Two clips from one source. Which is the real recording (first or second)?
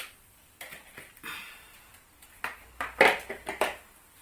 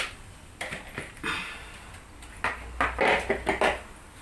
second